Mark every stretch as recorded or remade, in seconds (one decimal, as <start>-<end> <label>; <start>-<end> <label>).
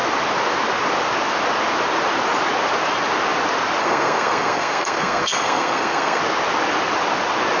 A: 0.0-3.8 recorded; 3.8-6.2 remade; 6.2-7.6 recorded